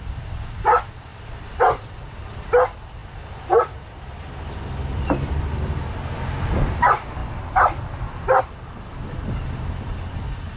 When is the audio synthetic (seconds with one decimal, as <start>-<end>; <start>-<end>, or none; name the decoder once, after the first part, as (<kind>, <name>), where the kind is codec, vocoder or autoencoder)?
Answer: 1.1-2.2 (vocoder, BigVGAN v2); 3.0-5.8